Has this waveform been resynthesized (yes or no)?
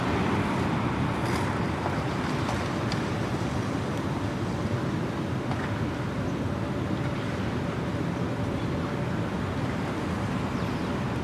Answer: no